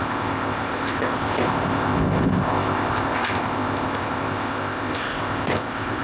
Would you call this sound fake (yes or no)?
yes